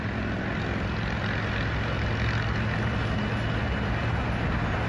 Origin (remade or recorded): recorded